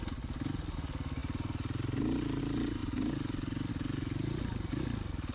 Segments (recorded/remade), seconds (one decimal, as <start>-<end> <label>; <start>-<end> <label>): 0.0-5.3 recorded